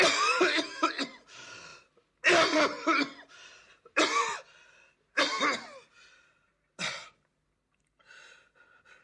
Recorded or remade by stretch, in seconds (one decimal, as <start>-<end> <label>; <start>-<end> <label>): 0.0-9.0 recorded